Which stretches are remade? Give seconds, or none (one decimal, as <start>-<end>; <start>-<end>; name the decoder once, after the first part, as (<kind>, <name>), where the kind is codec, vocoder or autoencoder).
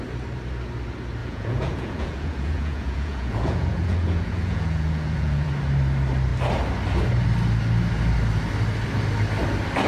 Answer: 1.2-5.5 (vocoder, Vocos)